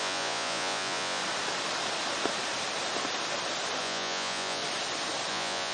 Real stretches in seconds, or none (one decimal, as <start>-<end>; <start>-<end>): 1.2-3.8; 4.6-5.3